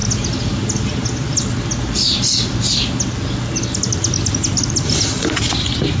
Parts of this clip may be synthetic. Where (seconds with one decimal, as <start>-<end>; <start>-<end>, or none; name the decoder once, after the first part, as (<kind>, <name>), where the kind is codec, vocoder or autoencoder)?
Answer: none